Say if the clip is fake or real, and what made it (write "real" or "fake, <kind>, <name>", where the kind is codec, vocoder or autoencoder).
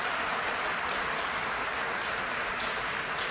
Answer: real